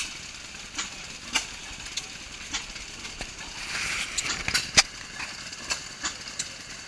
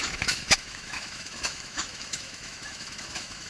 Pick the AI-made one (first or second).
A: second